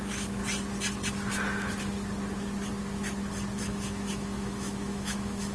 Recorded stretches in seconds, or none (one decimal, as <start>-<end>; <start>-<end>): 0.4-3.7